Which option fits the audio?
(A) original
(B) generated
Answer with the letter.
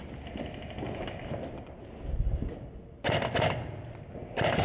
A